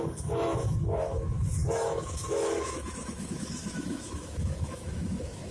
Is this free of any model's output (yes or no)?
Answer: no